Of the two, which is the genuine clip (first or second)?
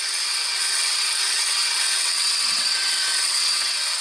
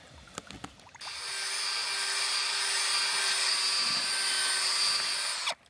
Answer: second